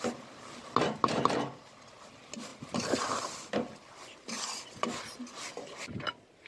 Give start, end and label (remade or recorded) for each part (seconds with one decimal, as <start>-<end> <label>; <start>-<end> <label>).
0.0-6.5 recorded